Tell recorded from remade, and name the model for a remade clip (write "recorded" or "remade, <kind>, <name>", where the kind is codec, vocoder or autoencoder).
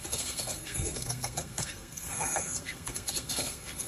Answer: remade, codec, SNAC